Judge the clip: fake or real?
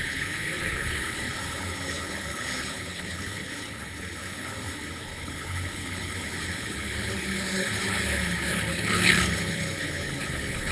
fake